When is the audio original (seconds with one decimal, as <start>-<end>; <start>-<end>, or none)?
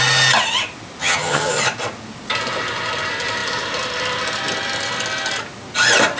0.0-1.0; 1.5-6.2